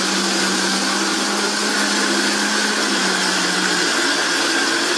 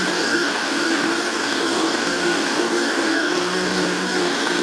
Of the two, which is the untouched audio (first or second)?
first